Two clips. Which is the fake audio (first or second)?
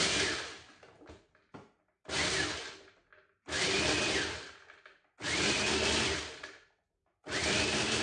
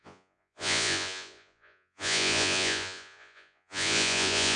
second